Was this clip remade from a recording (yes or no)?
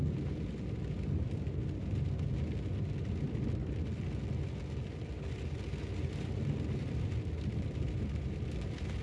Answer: no